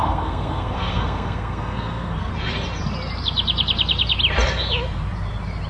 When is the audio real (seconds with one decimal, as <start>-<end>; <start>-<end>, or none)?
2.3-5.7